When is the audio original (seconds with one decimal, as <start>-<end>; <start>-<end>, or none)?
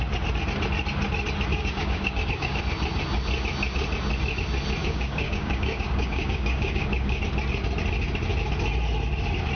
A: 0.0-1.5; 2.6-4.8; 7.2-9.5